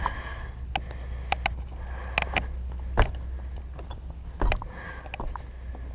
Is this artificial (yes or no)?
no